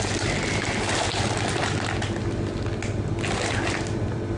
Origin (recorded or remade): recorded